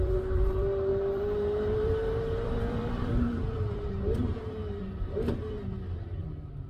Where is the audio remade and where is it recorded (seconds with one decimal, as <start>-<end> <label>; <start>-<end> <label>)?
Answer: 0.0-6.7 remade